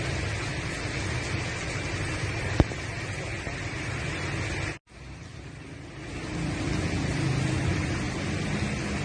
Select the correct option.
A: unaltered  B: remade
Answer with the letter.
A